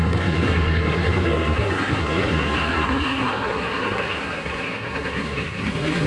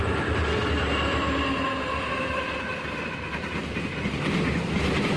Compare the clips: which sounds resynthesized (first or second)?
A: first